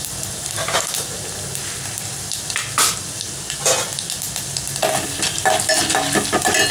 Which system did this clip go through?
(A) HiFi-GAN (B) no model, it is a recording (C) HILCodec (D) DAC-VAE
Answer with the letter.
B